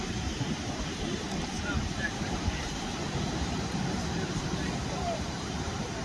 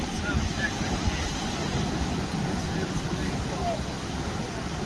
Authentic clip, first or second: second